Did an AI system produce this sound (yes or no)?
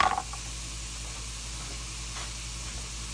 no